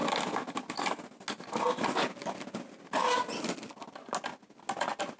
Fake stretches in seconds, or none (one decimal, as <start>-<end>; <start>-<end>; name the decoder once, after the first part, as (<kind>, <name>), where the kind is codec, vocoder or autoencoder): none